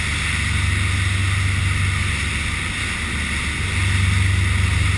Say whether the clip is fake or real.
real